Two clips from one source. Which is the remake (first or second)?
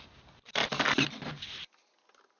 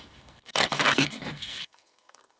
second